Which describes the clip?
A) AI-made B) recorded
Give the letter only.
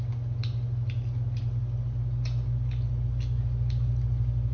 B